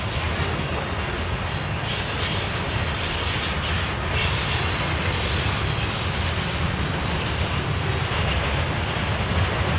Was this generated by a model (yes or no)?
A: no